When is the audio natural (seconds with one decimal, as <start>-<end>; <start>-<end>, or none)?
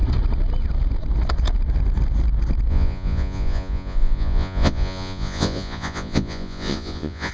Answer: 0.0-2.7